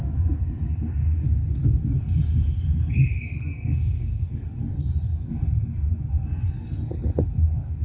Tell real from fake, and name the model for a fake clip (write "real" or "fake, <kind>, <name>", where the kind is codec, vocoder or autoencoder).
fake, codec, SNAC